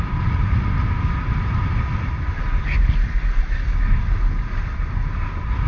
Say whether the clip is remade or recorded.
recorded